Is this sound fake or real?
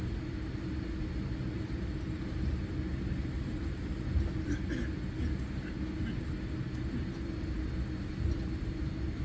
real